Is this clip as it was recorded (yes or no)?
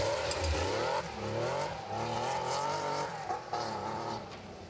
yes